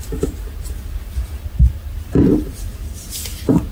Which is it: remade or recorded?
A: remade